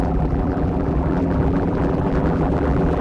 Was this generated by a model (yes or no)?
yes